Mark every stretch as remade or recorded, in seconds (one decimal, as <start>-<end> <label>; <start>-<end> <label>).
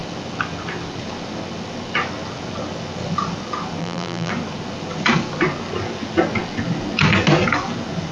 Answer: 0.0-3.8 recorded; 3.8-4.3 remade; 4.3-8.1 recorded